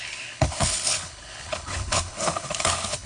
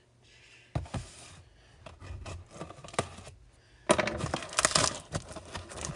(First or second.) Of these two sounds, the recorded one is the second